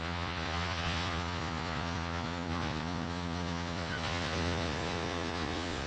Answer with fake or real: fake